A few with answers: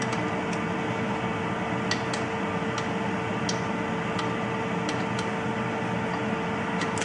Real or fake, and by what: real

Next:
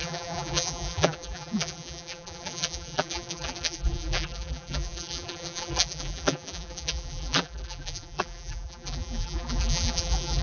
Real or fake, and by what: fake, vocoder, BigVGAN v2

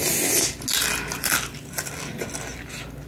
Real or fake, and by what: real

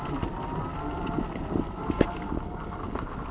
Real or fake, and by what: real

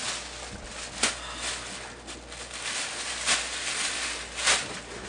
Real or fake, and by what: real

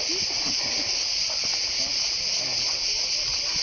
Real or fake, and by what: real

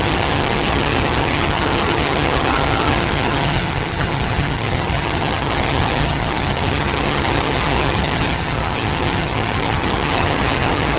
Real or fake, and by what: fake, vocoder, HiFi-GAN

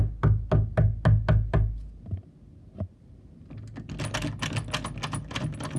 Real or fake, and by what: real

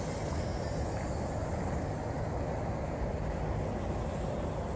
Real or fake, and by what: real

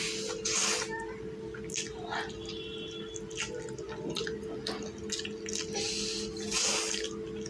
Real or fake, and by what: real